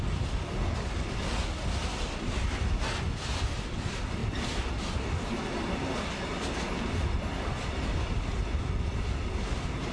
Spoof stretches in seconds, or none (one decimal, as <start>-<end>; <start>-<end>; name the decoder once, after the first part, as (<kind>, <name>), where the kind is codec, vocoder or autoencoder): none